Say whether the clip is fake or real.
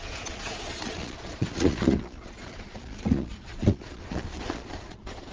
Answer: fake